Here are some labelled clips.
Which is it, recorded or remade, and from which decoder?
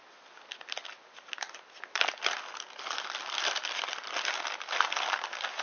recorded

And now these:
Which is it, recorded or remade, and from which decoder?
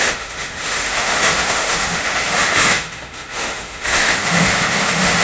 remade, autoencoder, DAC-VAE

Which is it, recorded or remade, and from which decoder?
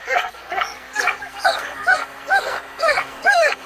remade, codec, SNAC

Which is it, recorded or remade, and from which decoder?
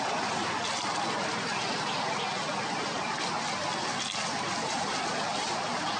recorded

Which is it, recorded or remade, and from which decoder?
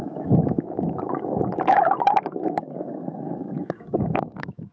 remade, autoencoder, DAC-VAE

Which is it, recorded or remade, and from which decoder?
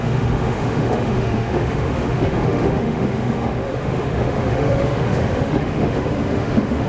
remade, autoencoder, DAC-VAE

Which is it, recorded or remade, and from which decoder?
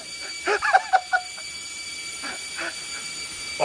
recorded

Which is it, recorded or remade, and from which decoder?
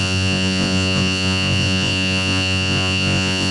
remade, vocoder, Vocos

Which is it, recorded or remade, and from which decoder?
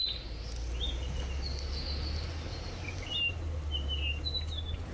recorded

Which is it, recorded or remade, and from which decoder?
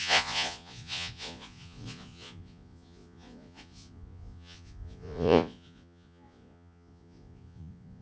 remade, vocoder, Vocos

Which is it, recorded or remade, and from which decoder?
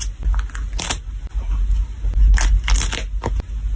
recorded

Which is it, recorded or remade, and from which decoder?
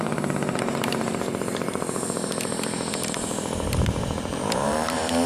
remade, vocoder, BigVGAN v2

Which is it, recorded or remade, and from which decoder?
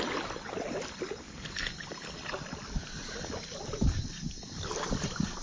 recorded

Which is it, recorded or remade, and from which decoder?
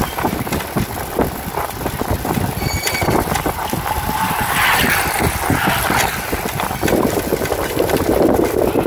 recorded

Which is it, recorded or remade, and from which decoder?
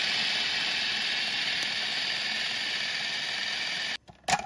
recorded